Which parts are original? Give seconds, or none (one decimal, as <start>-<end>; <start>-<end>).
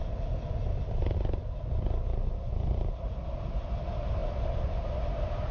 0.0-5.5